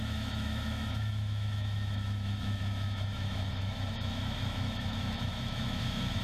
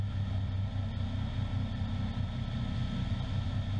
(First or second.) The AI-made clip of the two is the first